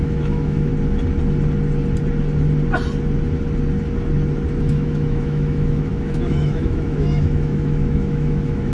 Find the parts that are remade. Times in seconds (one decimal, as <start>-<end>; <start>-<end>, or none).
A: 0.0-0.7; 4.6-8.7